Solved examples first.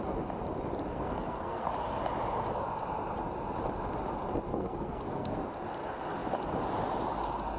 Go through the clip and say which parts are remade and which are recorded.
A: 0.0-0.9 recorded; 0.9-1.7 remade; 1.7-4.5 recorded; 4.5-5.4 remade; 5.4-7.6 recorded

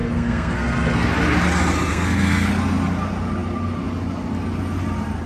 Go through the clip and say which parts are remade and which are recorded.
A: 0.0-1.1 remade; 1.1-1.9 recorded; 1.9-2.5 remade; 2.5-5.3 recorded

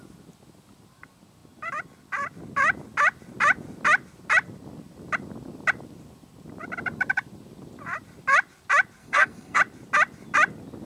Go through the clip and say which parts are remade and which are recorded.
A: 0.0-9.0 recorded; 9.0-9.6 remade; 9.6-10.8 recorded

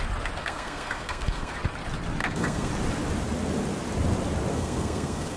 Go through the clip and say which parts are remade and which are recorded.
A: 0.0-0.4 recorded; 0.4-1.5 remade; 1.5-2.2 recorded; 2.2-2.7 remade; 2.7-4.5 recorded; 4.5-5.4 remade

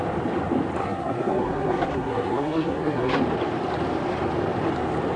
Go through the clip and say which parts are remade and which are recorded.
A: 0.0-0.8 recorded; 0.8-3.2 remade; 3.2-5.2 recorded

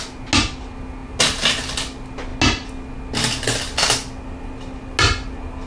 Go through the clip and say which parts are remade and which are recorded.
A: 0.0-5.7 recorded